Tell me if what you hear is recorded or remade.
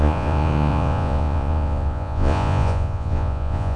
remade